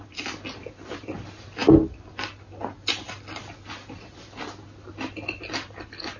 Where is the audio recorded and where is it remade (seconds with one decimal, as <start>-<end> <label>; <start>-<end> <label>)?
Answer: 0.0-6.2 recorded